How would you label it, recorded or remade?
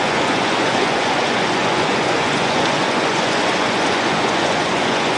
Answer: remade